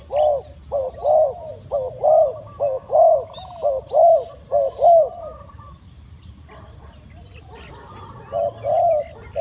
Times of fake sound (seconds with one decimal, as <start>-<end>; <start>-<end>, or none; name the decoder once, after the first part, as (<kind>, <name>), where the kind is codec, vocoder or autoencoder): none